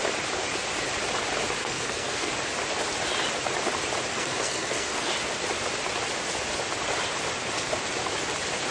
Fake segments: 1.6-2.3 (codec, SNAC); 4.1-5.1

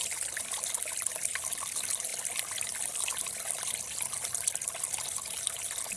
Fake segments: none

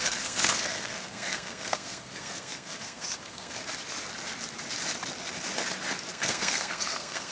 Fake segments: 0.0-3.6 (codec, SNAC); 6.1-7.3

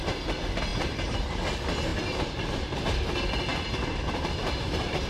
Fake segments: 0.7-1.3 (vocoder, BigVGAN v2); 1.9-3.1; 3.5-5.1

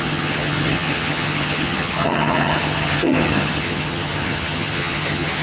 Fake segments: 0.0-5.4 (vocoder, HiFi-GAN)

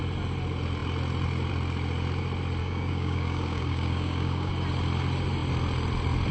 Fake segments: 2.6-4.5 (codec, DAC)

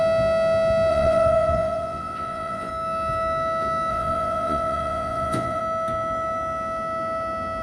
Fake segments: 0.9-2.7 (vocoder, Vocos); 3.9-5.6

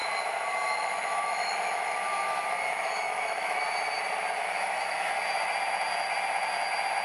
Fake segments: 0.0-3.6 (autoencoder, DAC-VAE); 4.4-5.1